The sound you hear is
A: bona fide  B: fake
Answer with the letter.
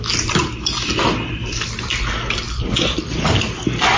A